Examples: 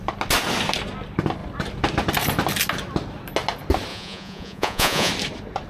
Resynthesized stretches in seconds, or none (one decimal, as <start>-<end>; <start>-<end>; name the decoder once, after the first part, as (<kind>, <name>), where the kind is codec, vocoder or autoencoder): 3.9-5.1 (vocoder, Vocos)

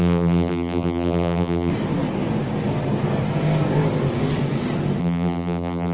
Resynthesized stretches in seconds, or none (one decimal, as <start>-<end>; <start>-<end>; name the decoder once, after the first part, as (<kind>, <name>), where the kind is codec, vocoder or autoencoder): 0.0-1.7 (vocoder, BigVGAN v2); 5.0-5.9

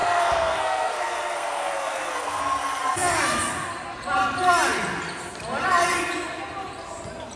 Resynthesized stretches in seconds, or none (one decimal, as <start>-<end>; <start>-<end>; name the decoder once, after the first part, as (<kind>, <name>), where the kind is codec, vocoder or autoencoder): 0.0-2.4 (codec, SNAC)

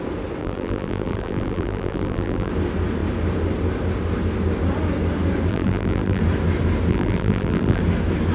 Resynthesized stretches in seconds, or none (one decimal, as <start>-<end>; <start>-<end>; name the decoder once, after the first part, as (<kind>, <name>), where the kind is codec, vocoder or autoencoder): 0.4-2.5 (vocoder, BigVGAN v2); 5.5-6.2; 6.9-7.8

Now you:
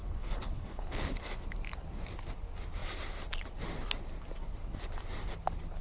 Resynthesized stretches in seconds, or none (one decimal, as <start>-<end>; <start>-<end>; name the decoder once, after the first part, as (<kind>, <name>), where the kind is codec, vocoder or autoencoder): 0.0-1.3 (codec, HILCodec)